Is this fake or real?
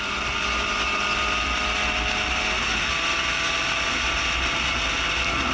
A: real